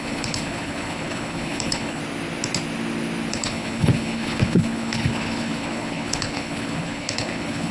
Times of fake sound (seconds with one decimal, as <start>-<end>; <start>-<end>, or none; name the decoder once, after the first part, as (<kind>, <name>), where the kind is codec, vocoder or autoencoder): 0.0-2.0 (codec, HILCodec); 3.3-7.7